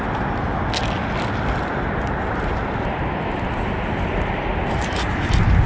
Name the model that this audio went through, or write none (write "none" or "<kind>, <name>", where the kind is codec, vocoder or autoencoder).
none